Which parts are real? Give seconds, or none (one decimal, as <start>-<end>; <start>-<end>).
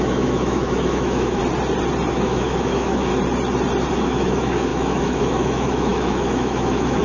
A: 1.4-2.1; 3.1-3.9